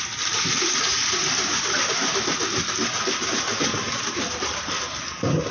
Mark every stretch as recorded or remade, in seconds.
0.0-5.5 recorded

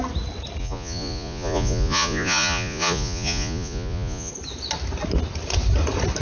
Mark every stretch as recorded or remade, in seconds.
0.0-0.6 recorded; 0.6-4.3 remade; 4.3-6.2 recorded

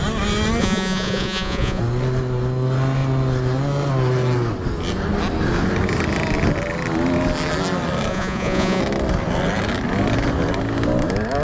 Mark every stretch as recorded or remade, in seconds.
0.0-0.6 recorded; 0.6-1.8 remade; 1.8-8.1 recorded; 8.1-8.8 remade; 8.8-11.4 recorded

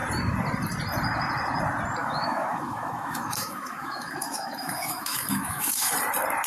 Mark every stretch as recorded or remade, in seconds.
0.0-2.0 recorded; 2.0-5.9 remade; 5.9-6.5 recorded

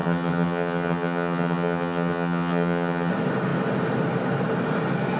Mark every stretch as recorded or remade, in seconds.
0.0-3.1 remade; 3.1-5.2 recorded